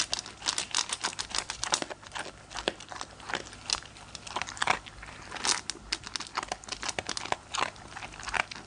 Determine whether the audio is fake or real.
real